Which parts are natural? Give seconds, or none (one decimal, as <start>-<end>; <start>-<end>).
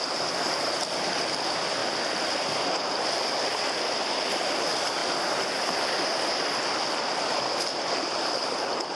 0.0-9.0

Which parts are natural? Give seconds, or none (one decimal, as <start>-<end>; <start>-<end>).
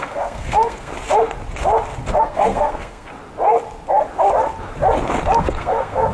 0.9-2.2; 3.1-5.4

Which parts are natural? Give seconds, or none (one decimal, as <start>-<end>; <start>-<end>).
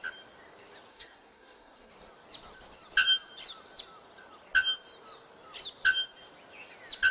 0.0-0.9; 1.9-7.1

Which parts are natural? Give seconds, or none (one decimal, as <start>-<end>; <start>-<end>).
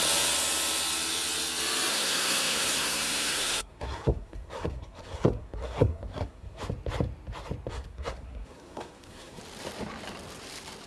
0.0-1.9; 6.6-7.7; 9.4-10.9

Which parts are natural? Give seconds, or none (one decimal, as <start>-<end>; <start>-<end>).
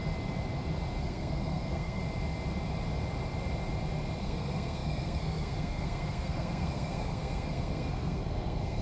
0.0-1.0; 2.0-4.2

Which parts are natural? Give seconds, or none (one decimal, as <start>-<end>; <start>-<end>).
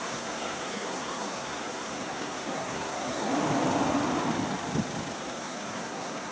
3.3-5.2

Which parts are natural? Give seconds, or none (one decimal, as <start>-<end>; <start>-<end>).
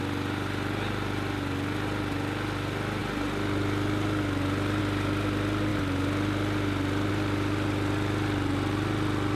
0.0-9.4